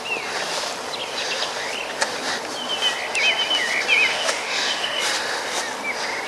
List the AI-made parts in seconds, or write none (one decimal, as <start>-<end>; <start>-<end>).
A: 4.1-5.0